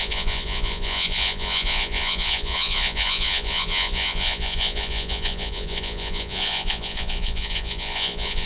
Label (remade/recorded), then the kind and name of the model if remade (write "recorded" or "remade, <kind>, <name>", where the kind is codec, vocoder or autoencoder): remade, vocoder, Vocos